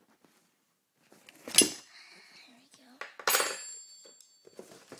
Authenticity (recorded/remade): recorded